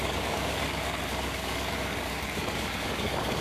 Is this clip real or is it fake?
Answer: fake